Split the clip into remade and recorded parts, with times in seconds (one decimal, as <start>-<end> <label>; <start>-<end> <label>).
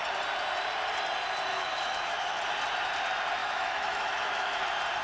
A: 0.0-1.5 recorded; 1.5-2.4 remade; 2.4-3.4 recorded; 3.4-4.6 remade; 4.6-5.0 recorded